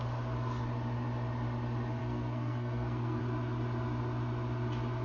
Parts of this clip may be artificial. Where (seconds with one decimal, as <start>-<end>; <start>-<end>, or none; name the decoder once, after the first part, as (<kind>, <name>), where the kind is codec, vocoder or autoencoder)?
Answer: 2.0-3.2 (codec, SNAC)